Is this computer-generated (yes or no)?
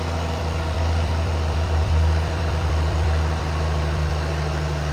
yes